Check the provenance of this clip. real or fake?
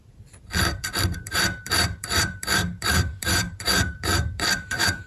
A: fake